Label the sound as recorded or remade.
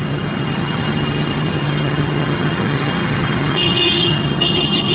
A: remade